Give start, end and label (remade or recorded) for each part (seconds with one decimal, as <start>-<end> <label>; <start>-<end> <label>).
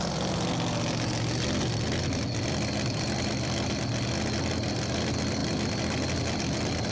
0.0-6.9 recorded